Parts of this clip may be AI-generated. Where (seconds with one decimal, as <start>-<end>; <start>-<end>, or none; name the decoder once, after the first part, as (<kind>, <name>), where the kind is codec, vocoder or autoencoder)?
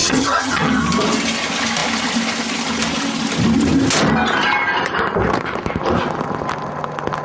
0.0-0.8 (vocoder, HiFi-GAN)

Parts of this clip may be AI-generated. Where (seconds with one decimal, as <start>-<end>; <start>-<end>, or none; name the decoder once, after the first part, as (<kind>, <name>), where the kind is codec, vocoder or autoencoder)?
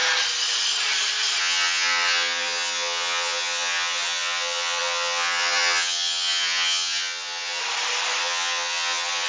1.4-7.6 (vocoder, HiFi-GAN); 8.2-9.3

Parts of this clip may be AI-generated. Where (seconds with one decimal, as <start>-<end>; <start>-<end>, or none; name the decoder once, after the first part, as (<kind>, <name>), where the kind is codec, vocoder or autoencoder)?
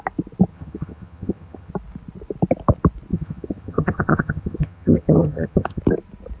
0.5-1.7 (vocoder, HiFi-GAN); 3.1-5.8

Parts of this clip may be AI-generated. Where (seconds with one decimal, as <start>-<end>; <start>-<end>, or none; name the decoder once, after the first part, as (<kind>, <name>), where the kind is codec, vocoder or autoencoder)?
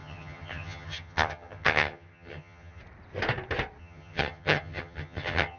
0.0-2.8 (vocoder, HiFi-GAN); 3.8-5.6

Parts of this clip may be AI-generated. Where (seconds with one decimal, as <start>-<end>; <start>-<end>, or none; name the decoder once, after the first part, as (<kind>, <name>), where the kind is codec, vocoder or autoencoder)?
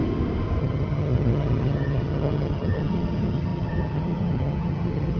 0.6-5.2 (vocoder, HiFi-GAN)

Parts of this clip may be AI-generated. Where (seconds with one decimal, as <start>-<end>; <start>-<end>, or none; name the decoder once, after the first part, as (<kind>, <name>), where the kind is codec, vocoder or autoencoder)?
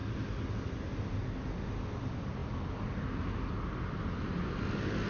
none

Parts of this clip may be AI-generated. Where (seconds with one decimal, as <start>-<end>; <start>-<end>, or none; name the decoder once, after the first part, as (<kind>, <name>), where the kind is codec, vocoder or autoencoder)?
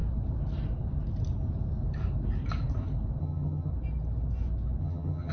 3.2-3.7 (vocoder, HiFi-GAN); 4.8-5.3